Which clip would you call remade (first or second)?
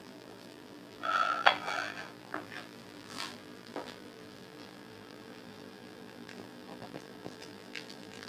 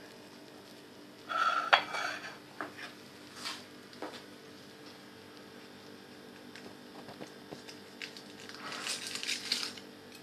first